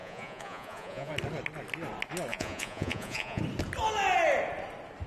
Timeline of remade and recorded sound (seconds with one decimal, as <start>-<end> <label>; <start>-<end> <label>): 0.0-1.1 remade; 1.1-2.3 recorded; 2.3-3.4 remade; 3.4-5.1 recorded